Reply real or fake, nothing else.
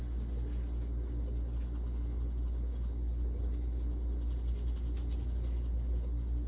real